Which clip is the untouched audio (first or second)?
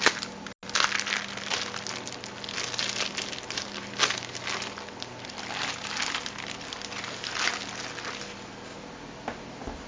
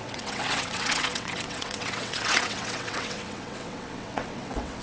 first